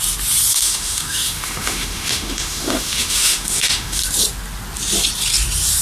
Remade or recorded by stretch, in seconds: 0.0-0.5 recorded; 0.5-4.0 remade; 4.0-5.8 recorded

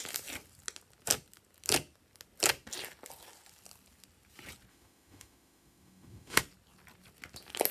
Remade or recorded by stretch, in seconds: 0.0-4.7 recorded; 4.7-6.4 remade; 6.4-7.7 recorded